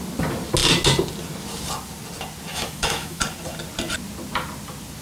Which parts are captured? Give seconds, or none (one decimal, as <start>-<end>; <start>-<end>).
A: 0.0-2.5; 3.2-5.0